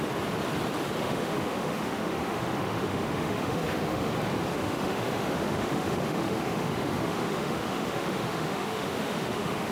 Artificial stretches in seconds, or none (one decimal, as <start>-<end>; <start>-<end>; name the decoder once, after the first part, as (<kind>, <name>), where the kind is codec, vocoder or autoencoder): 1.0-4.1 (autoencoder, DAC-VAE); 4.5-9.7